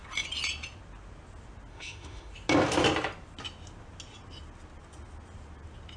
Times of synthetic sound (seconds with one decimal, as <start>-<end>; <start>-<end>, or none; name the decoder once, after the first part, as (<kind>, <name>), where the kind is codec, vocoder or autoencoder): 1.7-2.3 (autoencoder, DAC-VAE)